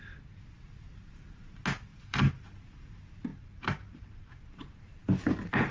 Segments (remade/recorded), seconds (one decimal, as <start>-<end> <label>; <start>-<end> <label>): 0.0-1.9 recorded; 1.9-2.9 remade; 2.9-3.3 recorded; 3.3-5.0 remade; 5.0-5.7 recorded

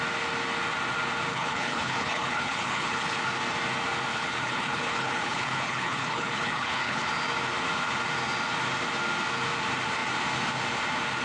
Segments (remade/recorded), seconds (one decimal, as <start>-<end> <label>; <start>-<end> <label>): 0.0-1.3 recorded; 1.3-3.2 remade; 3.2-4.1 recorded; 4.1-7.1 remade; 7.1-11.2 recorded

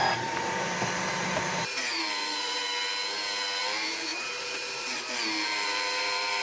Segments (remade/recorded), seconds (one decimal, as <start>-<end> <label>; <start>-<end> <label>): 0.0-2.6 remade; 2.6-3.6 recorded; 3.6-6.4 remade

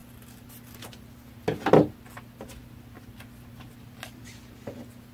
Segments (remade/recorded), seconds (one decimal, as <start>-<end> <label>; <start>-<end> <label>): 0.0-1.1 remade; 1.1-5.1 recorded